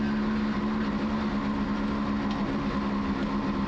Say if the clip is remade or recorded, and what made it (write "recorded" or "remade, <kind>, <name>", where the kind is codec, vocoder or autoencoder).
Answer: recorded